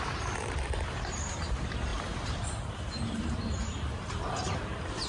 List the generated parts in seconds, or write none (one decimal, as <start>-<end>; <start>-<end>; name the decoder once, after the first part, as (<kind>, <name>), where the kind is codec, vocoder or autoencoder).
0.0-5.1 (vocoder, BigVGAN v2)